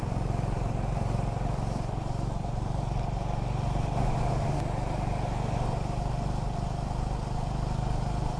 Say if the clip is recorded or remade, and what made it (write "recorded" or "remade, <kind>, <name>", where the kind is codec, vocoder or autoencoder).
recorded